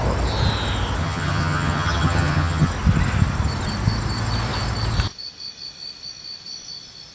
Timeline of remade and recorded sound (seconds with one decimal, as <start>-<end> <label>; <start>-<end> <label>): 0.0-1.0 recorded; 1.0-2.7 remade; 2.7-7.1 recorded